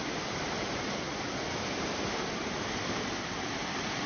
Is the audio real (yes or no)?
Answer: yes